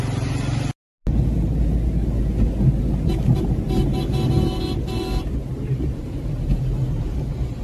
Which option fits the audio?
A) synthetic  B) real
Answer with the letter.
B